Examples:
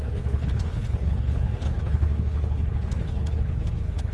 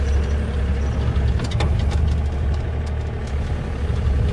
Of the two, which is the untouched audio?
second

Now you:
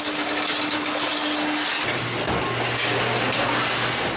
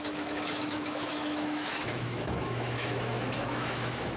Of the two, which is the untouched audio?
first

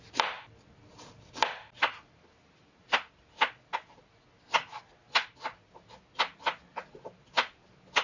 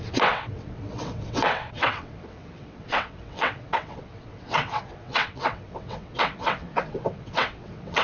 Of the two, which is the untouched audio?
first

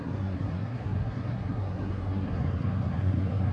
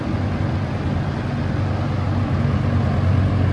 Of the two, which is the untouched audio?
second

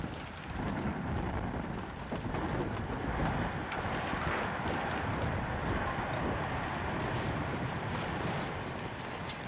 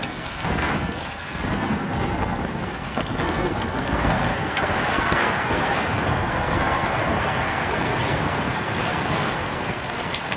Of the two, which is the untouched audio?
first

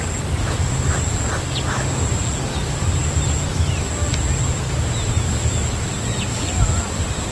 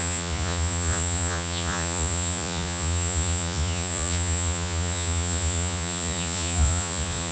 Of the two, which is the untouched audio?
first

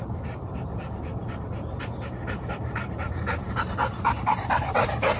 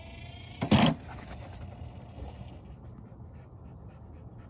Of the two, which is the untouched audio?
second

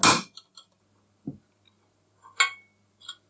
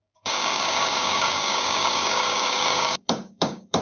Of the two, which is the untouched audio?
first